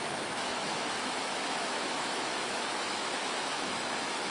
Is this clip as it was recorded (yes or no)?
no